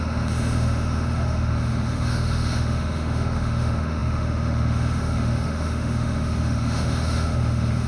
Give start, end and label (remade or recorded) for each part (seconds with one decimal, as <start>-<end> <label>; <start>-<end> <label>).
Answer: 0.0-7.9 remade